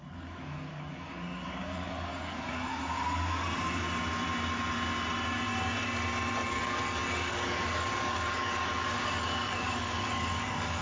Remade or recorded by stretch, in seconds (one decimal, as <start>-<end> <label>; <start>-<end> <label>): 0.0-2.8 remade; 2.8-6.5 recorded; 6.5-10.8 remade